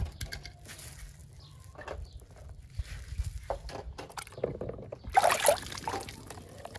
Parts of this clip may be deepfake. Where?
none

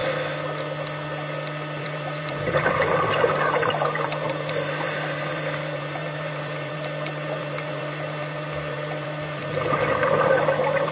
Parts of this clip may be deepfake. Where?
1.8-10.9 (vocoder, BigVGAN v2)

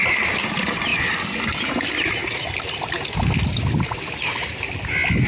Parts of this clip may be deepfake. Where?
none

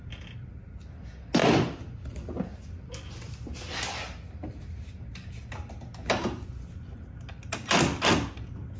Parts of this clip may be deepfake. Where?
none